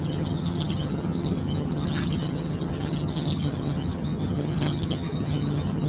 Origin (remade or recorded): remade